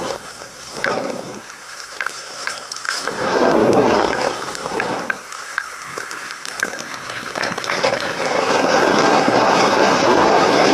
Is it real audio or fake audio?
fake